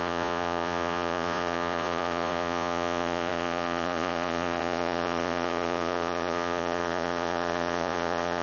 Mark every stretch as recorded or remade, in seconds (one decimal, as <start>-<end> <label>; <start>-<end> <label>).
0.0-8.4 remade